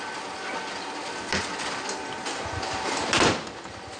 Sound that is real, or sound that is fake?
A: real